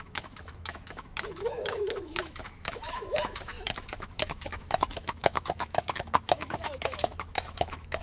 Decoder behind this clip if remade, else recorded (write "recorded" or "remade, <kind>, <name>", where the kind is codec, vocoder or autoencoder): remade, autoencoder, DAC-VAE